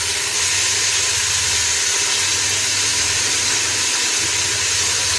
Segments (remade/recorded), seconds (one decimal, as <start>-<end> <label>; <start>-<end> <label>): 0.0-5.2 recorded